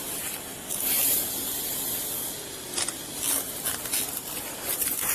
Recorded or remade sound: recorded